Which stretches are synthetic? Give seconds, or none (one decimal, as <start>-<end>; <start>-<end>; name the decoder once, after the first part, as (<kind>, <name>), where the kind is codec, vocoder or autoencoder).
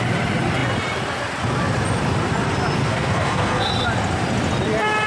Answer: 2.8-3.7 (codec, SNAC)